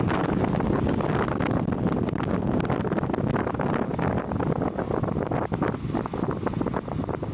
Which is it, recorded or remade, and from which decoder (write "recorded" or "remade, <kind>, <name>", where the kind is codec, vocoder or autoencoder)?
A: recorded